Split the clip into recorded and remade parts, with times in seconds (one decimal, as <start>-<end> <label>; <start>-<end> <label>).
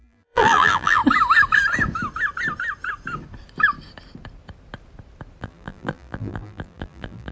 0.0-1.0 remade; 1.0-5.4 recorded; 5.4-7.3 remade